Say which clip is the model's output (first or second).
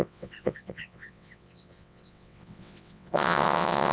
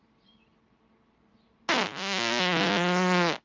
first